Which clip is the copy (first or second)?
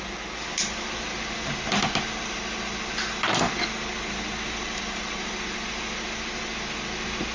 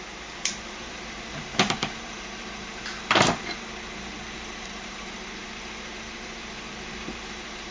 second